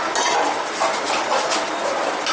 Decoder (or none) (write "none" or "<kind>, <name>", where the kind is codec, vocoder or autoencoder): none